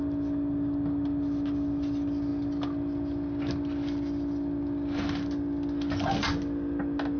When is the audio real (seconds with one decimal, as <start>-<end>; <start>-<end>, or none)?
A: 0.0-7.2